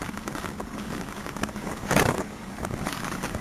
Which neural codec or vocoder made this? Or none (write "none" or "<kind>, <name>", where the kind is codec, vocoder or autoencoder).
codec, DAC